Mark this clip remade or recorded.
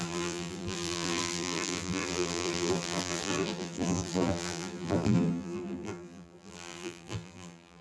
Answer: remade